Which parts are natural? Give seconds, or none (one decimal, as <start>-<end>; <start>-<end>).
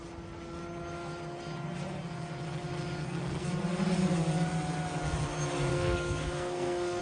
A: 0.0-3.0; 3.5-5.7